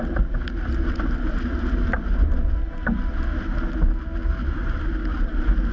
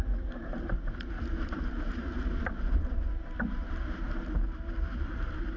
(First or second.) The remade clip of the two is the second